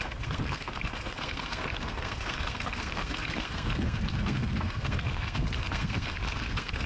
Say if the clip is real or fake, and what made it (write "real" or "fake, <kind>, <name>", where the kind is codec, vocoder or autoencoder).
fake, codec, SNAC